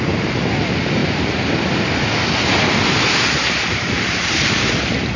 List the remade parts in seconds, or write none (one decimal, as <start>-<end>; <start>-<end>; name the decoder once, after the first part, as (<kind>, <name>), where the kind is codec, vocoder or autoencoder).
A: 1.0-1.7 (vocoder, BigVGAN v2); 3.4-5.2